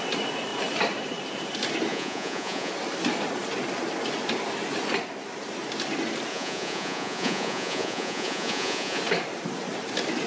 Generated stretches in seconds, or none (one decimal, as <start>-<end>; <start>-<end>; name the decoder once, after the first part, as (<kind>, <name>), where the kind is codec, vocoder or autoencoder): 1.9-2.7 (vocoder, Vocos); 6.3-9.0